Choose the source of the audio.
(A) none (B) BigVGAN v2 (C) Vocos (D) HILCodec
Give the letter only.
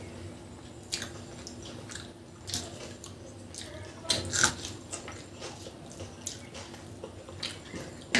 A